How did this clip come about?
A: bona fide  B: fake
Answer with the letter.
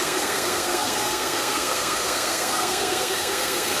B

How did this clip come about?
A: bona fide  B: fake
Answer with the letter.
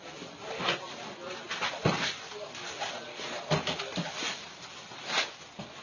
A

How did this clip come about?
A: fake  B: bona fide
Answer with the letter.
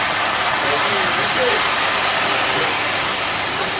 B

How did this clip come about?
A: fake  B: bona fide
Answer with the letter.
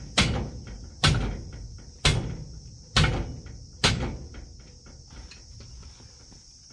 B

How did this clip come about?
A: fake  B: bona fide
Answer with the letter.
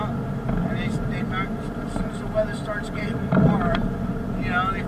B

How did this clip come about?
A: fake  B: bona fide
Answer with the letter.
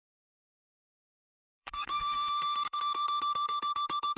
A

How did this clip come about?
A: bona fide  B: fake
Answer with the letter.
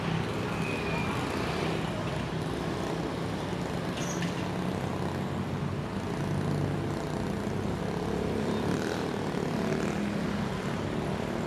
A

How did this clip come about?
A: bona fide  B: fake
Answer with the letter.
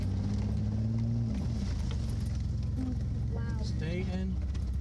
A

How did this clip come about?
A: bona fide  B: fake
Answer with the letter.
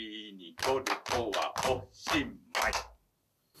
A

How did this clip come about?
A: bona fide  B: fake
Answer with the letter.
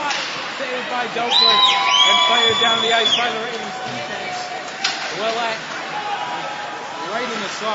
A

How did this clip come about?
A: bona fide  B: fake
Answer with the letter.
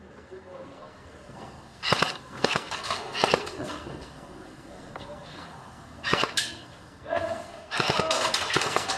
B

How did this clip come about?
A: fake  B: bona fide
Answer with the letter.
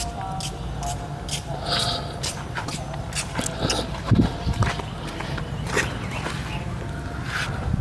B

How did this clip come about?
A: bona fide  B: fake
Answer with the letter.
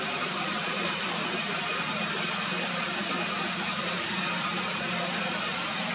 A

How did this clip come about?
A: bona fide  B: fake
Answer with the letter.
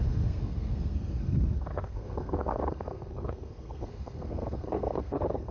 B